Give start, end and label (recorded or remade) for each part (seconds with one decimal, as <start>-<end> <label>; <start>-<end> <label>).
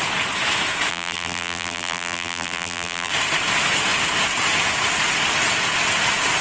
0.0-0.9 recorded; 0.9-3.1 remade; 3.1-6.4 recorded